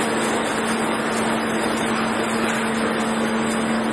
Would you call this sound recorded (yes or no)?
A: yes